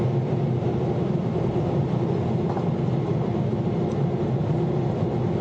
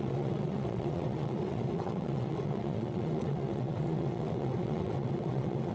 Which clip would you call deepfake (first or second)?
second